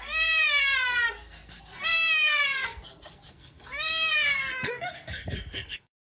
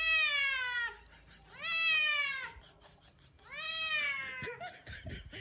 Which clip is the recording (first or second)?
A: second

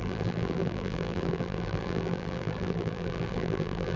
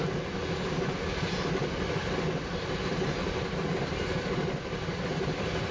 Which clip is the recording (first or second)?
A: second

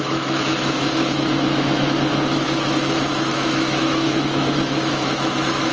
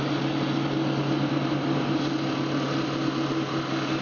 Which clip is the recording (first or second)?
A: second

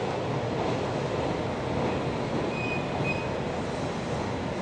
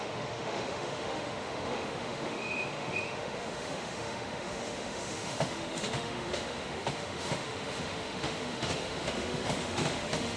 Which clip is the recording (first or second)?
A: first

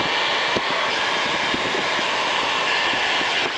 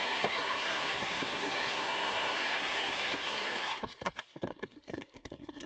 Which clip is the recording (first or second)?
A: first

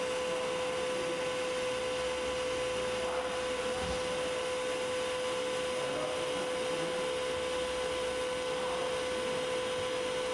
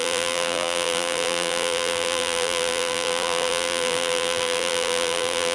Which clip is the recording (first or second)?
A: first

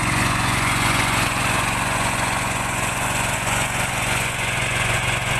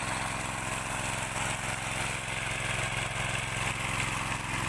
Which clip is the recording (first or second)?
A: second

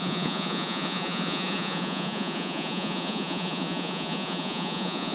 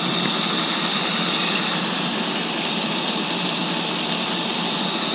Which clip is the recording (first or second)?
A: second